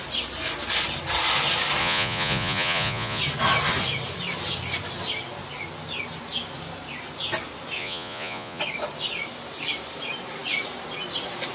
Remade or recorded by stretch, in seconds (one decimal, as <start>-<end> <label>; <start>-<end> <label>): 0.0-1.8 recorded; 1.8-3.2 remade; 3.2-7.8 recorded; 7.8-8.6 remade; 8.6-11.5 recorded